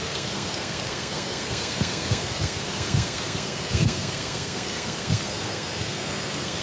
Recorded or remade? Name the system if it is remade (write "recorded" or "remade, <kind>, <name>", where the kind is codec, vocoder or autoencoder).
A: remade, codec, SNAC